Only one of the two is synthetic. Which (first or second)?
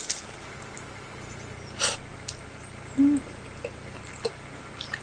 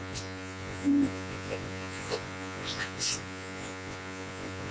second